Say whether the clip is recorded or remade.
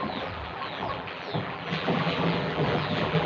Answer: remade